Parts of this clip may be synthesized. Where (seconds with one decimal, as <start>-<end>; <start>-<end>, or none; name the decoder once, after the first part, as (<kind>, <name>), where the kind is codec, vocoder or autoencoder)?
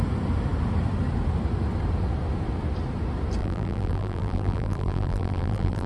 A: 3.4-5.9 (vocoder, BigVGAN v2)